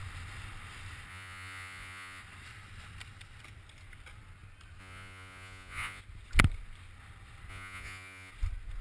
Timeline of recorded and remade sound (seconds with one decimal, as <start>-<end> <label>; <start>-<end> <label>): 0.0-1.1 recorded; 1.1-2.2 remade; 2.2-4.8 recorded; 4.8-6.0 remade; 6.0-7.5 recorded; 7.5-8.3 remade; 8.3-8.8 recorded